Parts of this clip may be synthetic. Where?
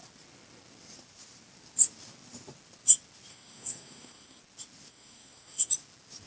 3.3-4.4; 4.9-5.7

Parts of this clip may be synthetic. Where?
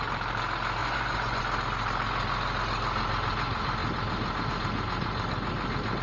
0.8-1.4